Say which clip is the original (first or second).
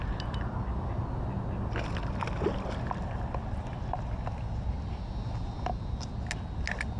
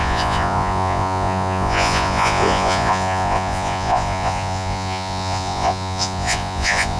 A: first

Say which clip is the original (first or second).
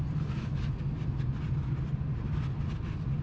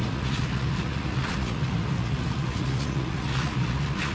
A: first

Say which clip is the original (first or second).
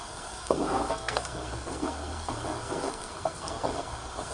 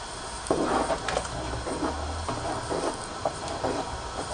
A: second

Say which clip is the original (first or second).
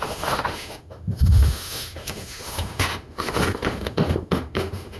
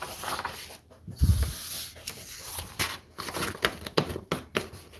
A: second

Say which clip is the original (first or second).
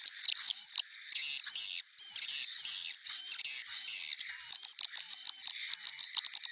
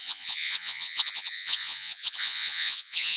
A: first